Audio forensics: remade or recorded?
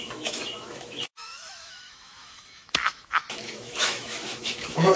remade